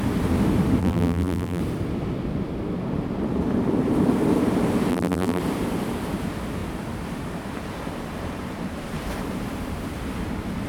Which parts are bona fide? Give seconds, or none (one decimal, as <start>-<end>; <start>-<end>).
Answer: 0.0-0.8; 1.6-4.9; 5.4-10.7